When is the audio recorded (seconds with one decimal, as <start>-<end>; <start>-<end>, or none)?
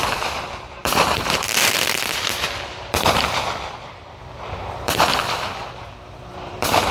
5.1-5.7